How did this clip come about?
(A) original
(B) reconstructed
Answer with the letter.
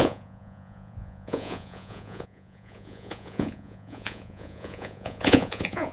B